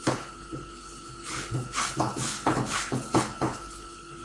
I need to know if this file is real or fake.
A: fake